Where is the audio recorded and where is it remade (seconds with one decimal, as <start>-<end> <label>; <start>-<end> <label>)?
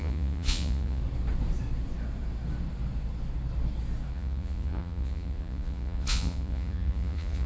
0.0-1.0 remade; 1.0-4.1 recorded; 4.1-7.5 remade